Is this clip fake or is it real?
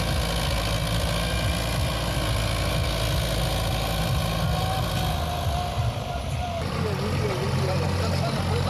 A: real